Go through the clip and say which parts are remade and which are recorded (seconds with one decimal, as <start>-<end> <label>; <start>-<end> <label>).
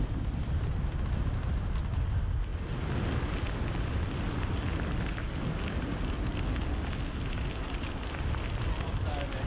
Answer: 0.0-9.5 recorded